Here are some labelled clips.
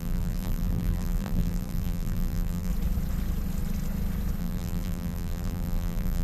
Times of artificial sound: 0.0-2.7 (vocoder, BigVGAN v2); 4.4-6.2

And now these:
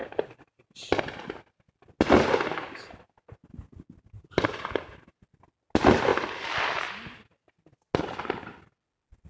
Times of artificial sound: none